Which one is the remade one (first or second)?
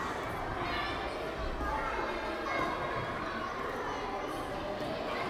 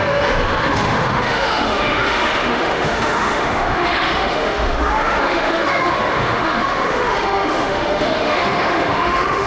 second